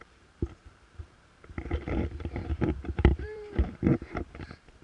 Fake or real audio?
fake